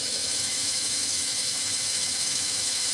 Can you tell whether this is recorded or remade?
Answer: remade